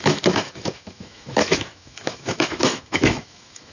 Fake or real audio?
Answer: fake